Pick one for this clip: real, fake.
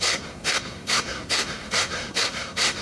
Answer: fake